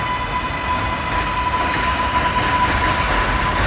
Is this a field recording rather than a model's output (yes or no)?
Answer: yes